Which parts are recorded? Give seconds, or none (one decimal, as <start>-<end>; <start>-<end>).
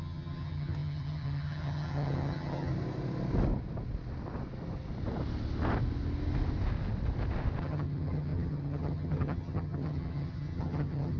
2.7-7.6